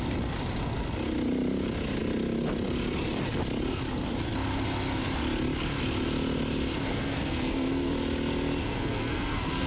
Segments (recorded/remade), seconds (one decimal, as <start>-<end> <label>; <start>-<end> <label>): 0.0-6.9 recorded; 6.9-7.9 remade; 7.9-8.6 recorded; 8.6-9.7 remade